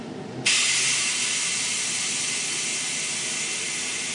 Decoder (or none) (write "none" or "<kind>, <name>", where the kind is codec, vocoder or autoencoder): none